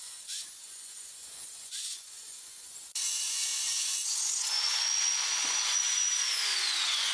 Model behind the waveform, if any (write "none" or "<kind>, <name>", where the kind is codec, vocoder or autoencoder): vocoder, Vocos